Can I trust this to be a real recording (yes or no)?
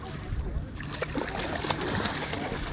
yes